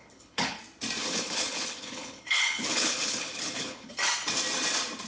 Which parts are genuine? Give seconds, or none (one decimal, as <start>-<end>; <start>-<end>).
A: 0.6-1.0; 3.9-5.1